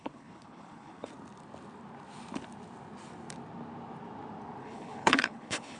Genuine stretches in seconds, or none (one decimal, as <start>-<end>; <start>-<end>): 1.1-4.6